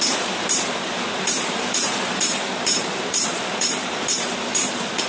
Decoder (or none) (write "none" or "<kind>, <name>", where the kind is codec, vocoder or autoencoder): vocoder, BigVGAN v2